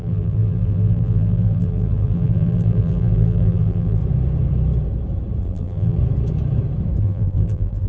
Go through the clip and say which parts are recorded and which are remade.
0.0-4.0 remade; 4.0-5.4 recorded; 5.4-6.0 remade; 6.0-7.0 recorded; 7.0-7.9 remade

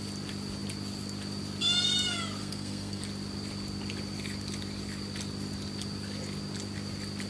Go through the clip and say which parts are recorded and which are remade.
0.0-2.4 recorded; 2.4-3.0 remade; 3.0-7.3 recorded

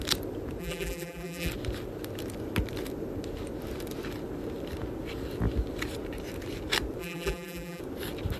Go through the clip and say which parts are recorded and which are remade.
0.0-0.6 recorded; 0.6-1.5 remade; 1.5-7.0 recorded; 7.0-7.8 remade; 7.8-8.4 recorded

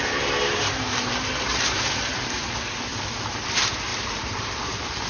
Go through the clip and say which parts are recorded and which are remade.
0.0-1.5 recorded; 1.5-2.1 remade; 2.1-3.9 recorded; 3.9-4.6 remade; 4.6-5.1 recorded

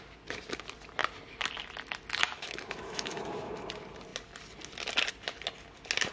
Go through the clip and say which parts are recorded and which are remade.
0.0-2.2 recorded; 2.2-3.5 remade; 3.5-6.1 recorded

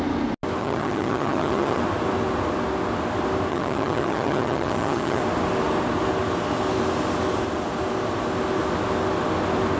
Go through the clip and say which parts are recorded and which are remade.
0.0-0.6 recorded; 0.6-1.8 remade; 1.8-3.5 recorded; 3.5-5.2 remade; 5.2-9.8 recorded

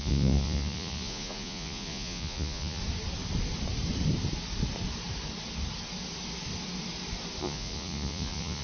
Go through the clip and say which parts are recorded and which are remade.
0.0-2.8 remade; 2.8-7.4 recorded; 7.4-8.6 remade